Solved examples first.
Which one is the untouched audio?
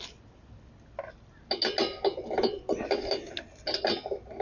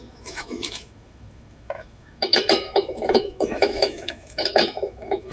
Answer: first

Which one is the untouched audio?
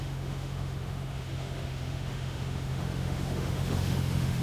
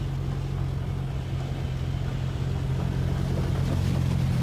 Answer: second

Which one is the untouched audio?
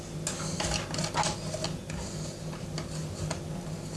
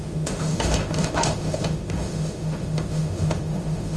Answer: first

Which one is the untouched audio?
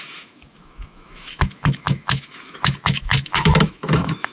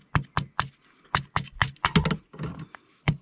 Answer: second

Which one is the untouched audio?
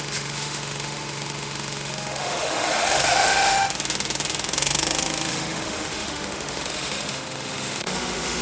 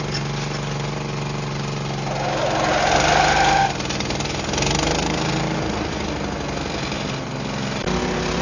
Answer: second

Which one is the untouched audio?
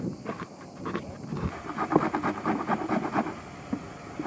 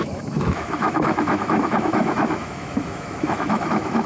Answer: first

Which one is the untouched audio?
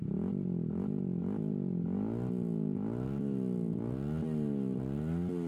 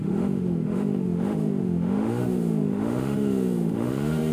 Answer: first